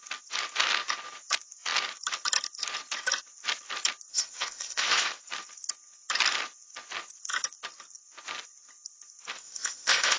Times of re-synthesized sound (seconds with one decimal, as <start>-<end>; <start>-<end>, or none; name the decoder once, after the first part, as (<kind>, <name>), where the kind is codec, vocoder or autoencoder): 4.1-5.2 (codec, ZipCodec); 9.3-10.2